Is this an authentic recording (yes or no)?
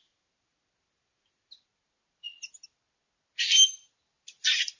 yes